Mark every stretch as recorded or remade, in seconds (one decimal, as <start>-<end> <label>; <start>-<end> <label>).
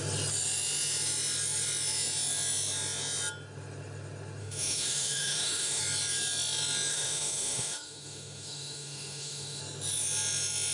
0.0-4.4 recorded; 4.4-5.8 remade; 5.8-6.9 recorded; 6.9-9.6 remade; 9.6-10.7 recorded